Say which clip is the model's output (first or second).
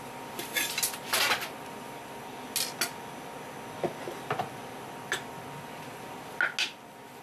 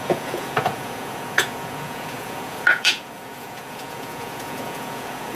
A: second